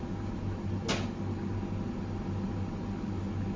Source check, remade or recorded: recorded